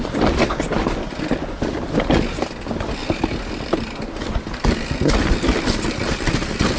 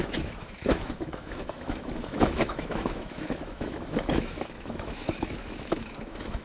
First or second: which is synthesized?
second